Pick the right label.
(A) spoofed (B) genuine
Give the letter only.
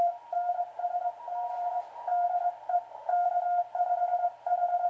A